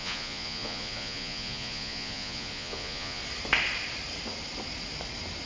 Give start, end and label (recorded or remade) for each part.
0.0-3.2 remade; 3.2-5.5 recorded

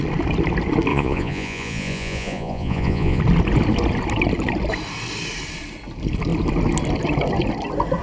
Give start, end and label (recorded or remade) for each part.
0.0-0.9 recorded; 0.9-3.2 remade; 3.2-8.0 recorded